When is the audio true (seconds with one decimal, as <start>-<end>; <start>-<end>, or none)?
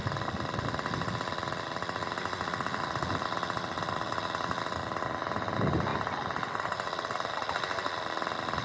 0.0-8.6